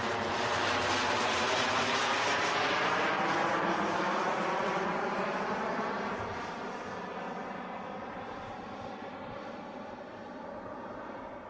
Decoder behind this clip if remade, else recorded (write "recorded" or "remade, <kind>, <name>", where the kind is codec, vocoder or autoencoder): remade, vocoder, BigVGAN v2